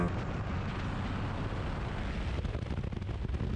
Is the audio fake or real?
real